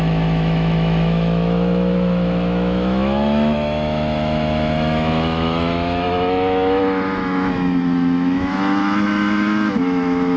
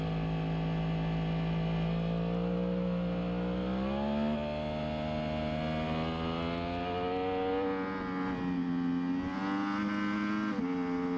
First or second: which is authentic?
second